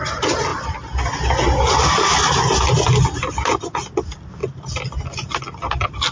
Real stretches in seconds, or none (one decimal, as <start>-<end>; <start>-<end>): 0.0-6.1